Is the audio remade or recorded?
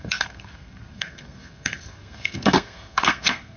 remade